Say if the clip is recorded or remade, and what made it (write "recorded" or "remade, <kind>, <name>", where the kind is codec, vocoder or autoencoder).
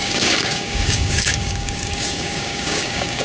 remade, codec, DAC